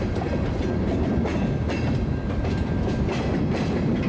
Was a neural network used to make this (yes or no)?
no